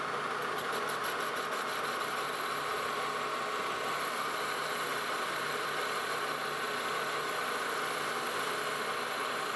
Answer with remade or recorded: recorded